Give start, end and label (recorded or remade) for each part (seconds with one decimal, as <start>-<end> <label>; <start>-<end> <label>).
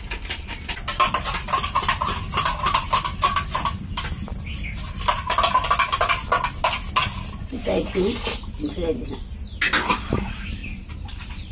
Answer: 0.0-10.6 recorded; 10.6-11.5 remade